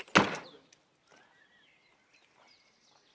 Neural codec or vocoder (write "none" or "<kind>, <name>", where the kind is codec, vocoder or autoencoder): none